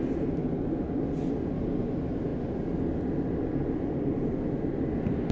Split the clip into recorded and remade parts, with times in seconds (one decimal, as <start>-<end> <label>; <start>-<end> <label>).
0.0-5.3 recorded